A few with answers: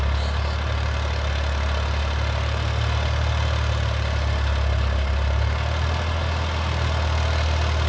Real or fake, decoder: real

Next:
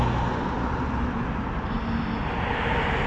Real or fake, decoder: real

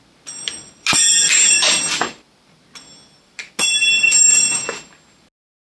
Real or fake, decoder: real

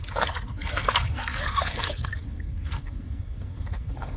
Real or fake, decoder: fake, codec, SNAC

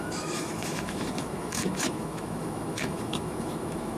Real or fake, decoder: fake, autoencoder, DAC-VAE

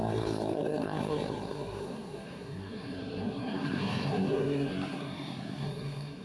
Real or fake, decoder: fake, codec, SNAC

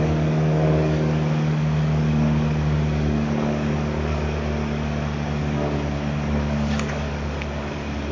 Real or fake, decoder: fake, codec, DAC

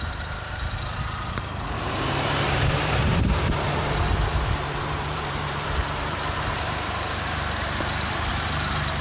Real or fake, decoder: fake, vocoder, BigVGAN v2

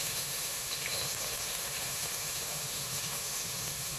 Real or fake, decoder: fake, autoencoder, DAC-VAE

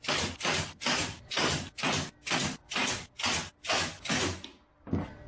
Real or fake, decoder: fake, vocoder, BigVGAN v2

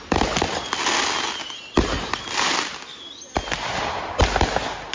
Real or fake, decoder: real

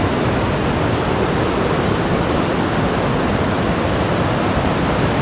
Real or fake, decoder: real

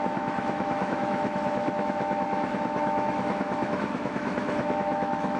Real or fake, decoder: fake, autoencoder, DAC-VAE